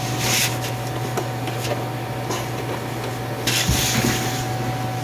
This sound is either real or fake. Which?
real